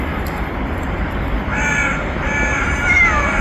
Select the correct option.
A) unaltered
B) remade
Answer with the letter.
A